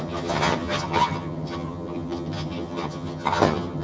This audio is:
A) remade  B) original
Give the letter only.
A